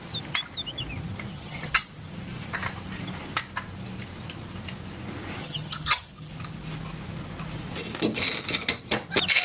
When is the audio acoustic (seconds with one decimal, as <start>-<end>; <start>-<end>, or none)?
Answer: 0.0-1.3; 1.8-5.4; 6.3-9.4